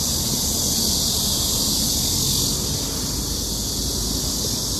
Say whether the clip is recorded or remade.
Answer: recorded